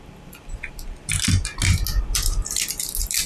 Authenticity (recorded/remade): recorded